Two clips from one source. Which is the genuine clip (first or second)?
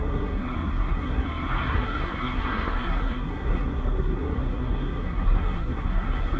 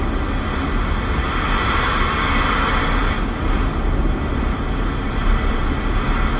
second